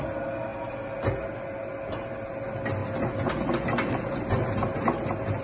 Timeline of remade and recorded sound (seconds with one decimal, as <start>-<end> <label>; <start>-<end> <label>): 0.0-5.4 recorded